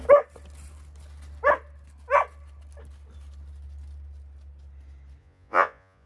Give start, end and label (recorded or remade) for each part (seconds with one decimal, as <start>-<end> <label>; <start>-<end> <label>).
0.0-5.2 recorded; 5.2-6.1 remade